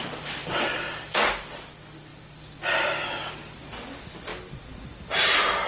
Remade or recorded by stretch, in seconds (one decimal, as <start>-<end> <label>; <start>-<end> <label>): 0.0-0.4 recorded; 0.4-1.2 remade; 1.2-2.1 recorded; 2.1-3.3 remade; 3.3-5.7 recorded